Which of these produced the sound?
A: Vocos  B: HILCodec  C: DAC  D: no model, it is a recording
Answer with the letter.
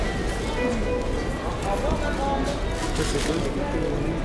D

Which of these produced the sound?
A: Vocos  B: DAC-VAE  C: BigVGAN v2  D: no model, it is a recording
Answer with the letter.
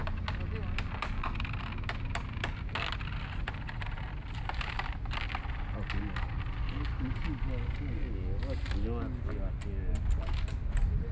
D